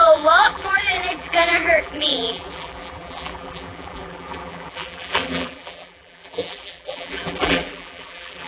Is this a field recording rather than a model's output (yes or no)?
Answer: no